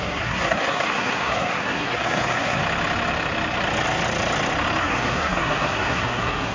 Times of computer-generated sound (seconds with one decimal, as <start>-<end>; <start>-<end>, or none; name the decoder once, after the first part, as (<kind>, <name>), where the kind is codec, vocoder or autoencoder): 0.0-2.6 (codec, SNAC); 4.8-6.5